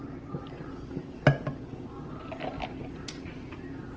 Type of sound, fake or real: real